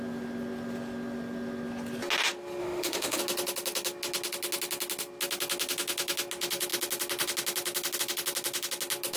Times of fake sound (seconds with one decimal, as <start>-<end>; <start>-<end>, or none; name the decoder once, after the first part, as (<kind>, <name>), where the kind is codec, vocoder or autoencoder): 2.6-3.2 (autoencoder, DAC-VAE)

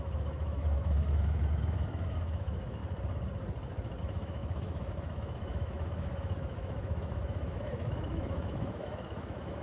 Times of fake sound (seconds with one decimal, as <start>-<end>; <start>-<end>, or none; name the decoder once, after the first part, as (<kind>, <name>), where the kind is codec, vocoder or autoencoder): 0.0-2.8 (autoencoder, DAC-VAE); 4.0-9.6

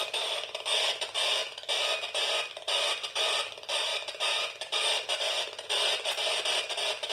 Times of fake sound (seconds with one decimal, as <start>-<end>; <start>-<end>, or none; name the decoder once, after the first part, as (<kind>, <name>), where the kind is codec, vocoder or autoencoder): none

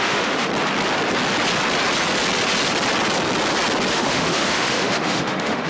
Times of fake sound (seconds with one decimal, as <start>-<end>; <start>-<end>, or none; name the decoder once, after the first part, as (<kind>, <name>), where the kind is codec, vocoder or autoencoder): 0.0-0.5 (autoencoder, DAC-VAE); 3.9-5.7

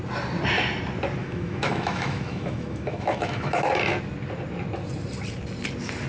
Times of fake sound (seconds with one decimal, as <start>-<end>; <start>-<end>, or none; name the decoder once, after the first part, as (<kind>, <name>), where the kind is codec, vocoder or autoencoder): 1.2-3.7 (autoencoder, DAC-VAE)